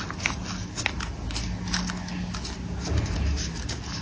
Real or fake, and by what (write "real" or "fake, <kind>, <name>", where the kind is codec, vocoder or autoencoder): real